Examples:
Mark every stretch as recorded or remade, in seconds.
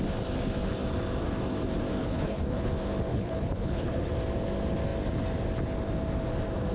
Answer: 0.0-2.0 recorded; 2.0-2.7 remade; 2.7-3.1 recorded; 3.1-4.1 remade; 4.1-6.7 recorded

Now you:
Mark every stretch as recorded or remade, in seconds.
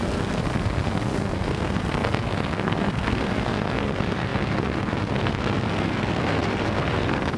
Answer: 0.0-7.4 remade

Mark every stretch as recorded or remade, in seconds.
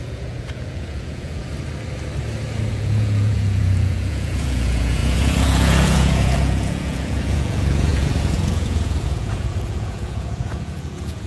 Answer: 0.0-1.5 remade; 1.5-2.7 recorded; 2.7-11.3 remade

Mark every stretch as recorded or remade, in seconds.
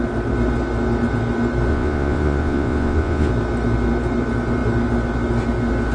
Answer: 0.0-1.7 recorded; 1.7-3.3 remade; 3.3-5.9 recorded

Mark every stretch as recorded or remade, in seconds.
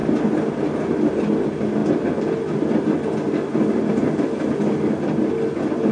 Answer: 0.0-5.9 recorded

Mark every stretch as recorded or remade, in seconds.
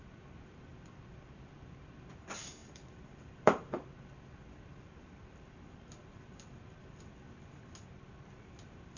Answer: 0.0-0.7 recorded; 0.7-2.1 remade; 2.1-2.6 recorded; 2.6-7.0 remade; 7.0-9.0 recorded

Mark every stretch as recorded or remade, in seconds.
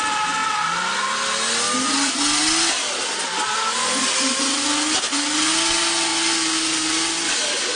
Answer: 0.0-7.8 recorded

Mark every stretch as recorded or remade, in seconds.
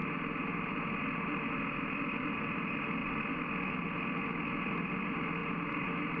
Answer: 0.0-6.2 recorded